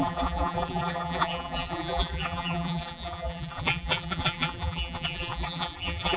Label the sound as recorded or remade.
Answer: remade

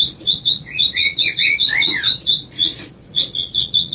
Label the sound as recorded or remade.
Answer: remade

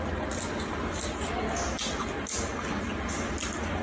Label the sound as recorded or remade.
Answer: recorded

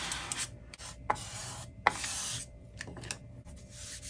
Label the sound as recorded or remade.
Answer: recorded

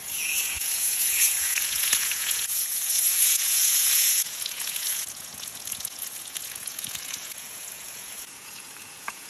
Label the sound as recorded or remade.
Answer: remade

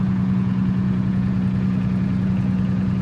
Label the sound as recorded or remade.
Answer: remade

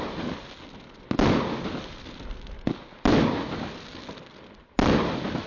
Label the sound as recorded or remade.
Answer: recorded